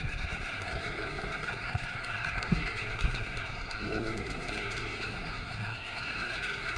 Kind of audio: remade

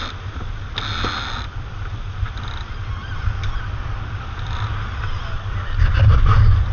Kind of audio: recorded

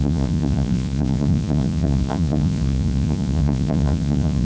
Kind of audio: remade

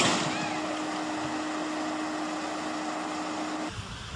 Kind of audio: recorded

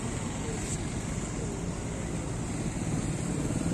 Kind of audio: recorded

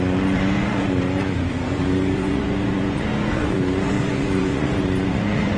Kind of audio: remade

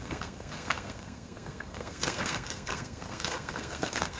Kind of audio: remade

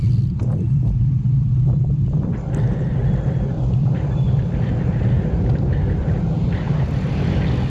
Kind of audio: recorded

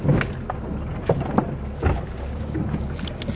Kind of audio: recorded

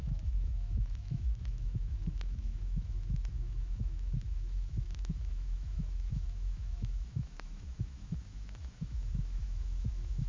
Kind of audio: remade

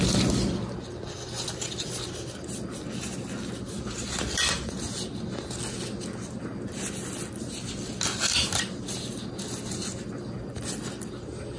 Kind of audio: recorded